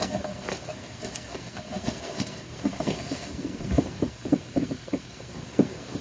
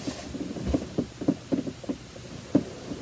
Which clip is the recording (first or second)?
second